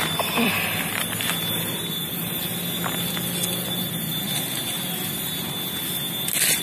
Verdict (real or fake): real